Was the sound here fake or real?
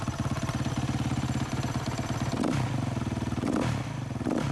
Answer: real